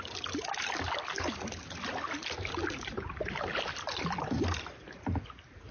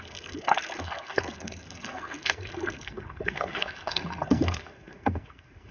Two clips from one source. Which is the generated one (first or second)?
second